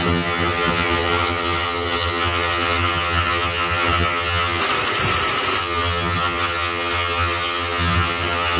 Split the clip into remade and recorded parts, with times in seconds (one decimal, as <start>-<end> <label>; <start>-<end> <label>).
0.0-4.6 remade; 4.6-5.6 recorded; 5.6-8.6 remade